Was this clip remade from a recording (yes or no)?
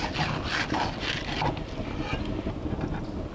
no